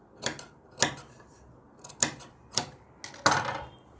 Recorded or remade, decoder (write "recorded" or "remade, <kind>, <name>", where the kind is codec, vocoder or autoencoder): recorded